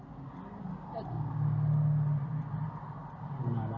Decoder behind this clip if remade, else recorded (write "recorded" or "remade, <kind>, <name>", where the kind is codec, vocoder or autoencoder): recorded